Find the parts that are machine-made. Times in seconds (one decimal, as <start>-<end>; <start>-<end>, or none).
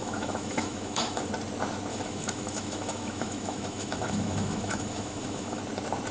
0.0-1.3; 1.9-5.6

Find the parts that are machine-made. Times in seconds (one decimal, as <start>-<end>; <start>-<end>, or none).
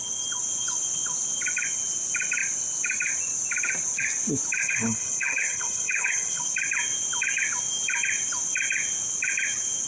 4.6-6.4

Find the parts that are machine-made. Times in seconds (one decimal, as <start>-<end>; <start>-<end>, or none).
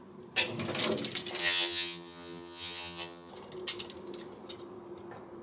1.4-3.3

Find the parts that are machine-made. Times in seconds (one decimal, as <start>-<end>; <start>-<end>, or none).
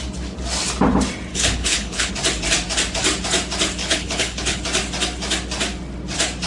1.3-2.1; 3.8-4.6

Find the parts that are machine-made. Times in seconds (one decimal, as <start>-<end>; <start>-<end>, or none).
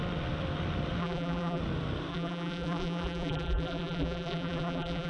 1.0-1.6; 2.1-5.1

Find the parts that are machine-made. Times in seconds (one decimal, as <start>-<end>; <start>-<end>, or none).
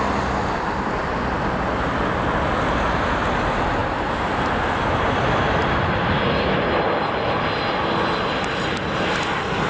none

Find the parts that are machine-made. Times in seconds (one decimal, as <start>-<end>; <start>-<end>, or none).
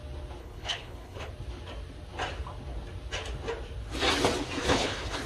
0.4-1.3; 4.6-5.3